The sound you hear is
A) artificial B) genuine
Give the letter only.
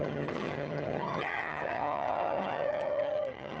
A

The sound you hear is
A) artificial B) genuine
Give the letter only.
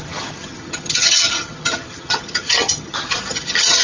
A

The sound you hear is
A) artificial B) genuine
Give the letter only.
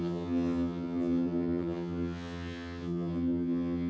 A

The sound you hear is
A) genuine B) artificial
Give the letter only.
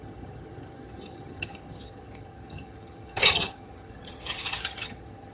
B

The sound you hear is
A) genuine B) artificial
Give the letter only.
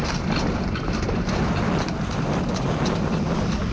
A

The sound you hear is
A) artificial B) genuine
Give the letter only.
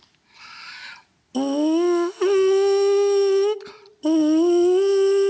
B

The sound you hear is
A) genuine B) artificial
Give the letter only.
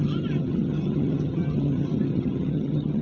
B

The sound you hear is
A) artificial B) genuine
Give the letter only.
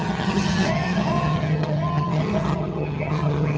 A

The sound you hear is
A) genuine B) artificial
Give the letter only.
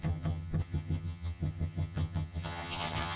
B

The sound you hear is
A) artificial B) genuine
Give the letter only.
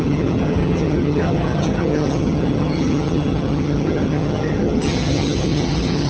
A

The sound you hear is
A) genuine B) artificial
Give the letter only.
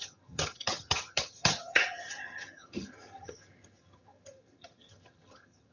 B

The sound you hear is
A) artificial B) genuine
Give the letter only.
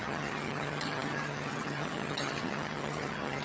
A